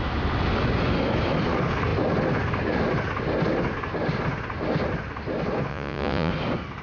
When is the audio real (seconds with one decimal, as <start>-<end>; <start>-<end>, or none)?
0.0-5.7; 6.3-6.8